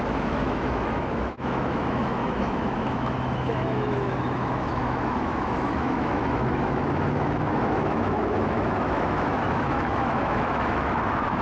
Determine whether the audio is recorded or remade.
remade